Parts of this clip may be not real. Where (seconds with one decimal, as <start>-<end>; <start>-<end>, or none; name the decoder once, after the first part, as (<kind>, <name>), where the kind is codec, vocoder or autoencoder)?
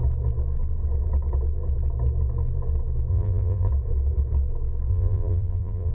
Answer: 3.1-3.7 (vocoder, BigVGAN v2); 4.9-5.9